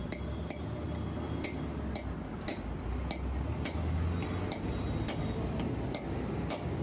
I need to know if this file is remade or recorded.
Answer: recorded